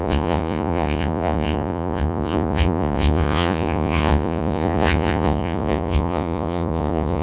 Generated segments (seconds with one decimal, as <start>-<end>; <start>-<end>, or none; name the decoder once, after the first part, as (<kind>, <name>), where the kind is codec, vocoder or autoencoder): 0.0-7.2 (vocoder, Vocos)

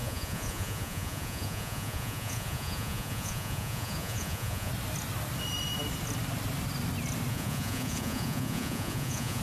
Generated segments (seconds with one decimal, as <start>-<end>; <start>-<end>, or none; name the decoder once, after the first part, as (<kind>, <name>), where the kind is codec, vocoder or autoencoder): 0.0-4.7 (vocoder, Vocos); 7.3-9.4

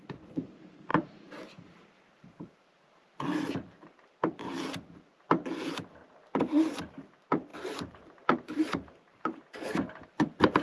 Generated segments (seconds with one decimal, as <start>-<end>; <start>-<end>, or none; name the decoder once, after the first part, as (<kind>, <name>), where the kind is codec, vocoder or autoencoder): 0.0-10.6 (vocoder, BigVGAN v2)

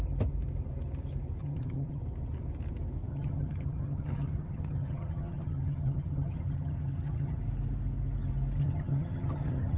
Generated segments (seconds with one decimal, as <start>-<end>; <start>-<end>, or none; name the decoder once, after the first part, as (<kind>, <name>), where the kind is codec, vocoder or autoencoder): 1.4-2.0 (vocoder, HiFi-GAN); 3.1-7.4; 8.6-9.8

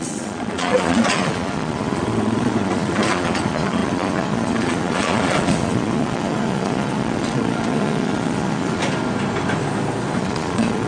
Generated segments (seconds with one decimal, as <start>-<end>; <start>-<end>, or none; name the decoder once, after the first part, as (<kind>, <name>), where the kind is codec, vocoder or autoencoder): 0.0-8.8 (vocoder, Vocos); 10.2-10.9